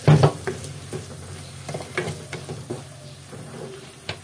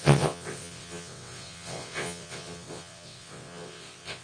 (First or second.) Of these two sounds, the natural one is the first